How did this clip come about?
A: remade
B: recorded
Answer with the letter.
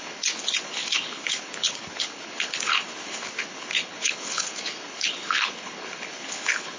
A